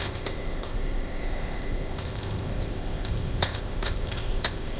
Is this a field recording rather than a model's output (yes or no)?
no